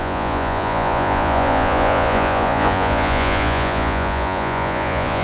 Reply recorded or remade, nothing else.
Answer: remade